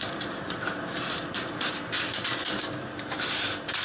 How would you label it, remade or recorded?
remade